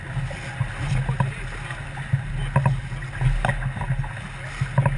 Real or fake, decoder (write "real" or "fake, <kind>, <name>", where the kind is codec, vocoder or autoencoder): real